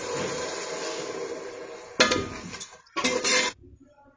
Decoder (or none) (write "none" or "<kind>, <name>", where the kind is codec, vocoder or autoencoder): none